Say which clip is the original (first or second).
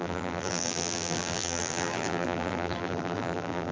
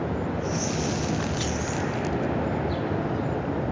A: second